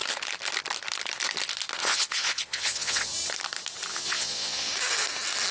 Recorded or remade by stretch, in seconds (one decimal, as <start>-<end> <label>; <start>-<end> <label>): 0.0-1.8 recorded; 1.8-3.1 remade; 3.1-3.9 recorded; 3.9-4.7 remade; 4.7-5.5 recorded

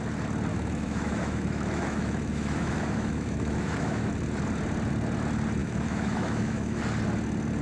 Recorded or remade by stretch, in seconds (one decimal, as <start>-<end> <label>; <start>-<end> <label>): 0.0-0.5 recorded; 0.5-4.1 remade; 4.1-5.6 recorded; 5.6-6.8 remade; 6.8-7.6 recorded

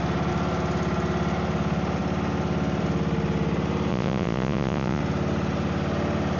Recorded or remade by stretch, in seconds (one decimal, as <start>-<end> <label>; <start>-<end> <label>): 0.0-3.9 recorded; 3.9-5.0 remade; 5.0-6.4 recorded

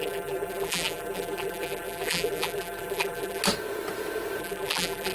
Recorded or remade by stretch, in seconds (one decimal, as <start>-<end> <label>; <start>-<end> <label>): 0.0-3.4 remade; 3.4-4.4 recorded; 4.4-5.1 remade

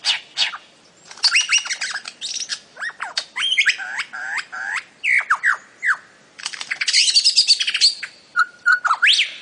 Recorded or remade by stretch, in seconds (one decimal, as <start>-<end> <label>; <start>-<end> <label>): 0.0-2.5 recorded; 2.5-4.9 remade; 4.9-8.3 recorded; 8.3-8.8 remade; 8.8-9.4 recorded

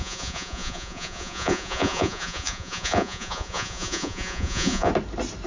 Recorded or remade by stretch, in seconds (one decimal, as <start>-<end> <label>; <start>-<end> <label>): 0.0-4.9 remade; 4.9-5.5 recorded